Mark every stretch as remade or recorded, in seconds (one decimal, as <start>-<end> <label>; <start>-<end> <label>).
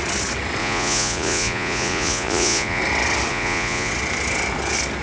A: 0.0-0.6 recorded; 0.6-2.8 remade; 2.8-3.3 recorded; 3.3-3.9 remade; 3.9-5.0 recorded